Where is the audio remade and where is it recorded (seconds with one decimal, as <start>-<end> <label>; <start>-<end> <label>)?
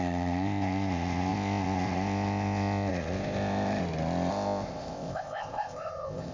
0.0-3.8 remade; 3.8-4.3 recorded; 4.3-6.3 remade